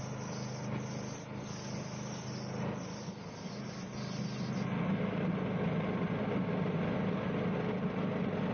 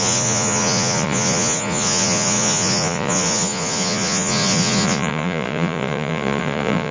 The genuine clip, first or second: first